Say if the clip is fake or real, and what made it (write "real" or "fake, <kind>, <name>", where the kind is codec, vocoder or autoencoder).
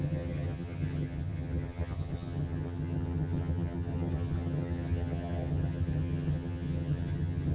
fake, vocoder, HiFi-GAN